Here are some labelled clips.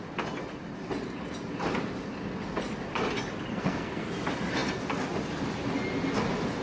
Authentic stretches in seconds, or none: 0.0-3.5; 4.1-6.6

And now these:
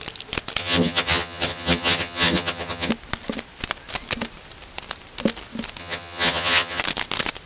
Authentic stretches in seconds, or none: 0.0-0.6; 2.9-5.8; 6.8-7.5

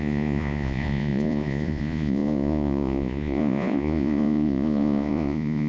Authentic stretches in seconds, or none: none

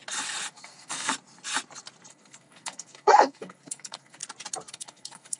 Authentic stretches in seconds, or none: 0.0-0.5; 1.1-2.1; 4.2-4.7

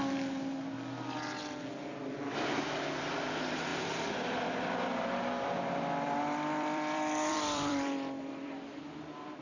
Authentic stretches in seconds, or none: 0.0-3.7; 8.8-9.4

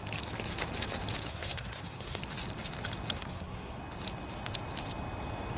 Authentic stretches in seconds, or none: 0.0-1.3; 2.2-3.2; 3.8-5.6

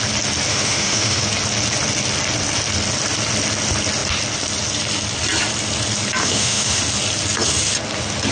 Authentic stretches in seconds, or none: 0.0-0.5; 1.2-6.2; 6.8-8.3